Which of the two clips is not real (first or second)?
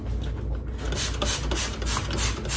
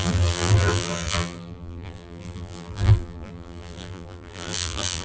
second